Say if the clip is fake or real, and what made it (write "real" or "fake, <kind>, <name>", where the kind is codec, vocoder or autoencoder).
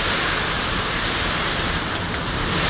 real